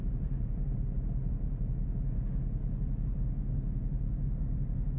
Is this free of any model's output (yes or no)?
yes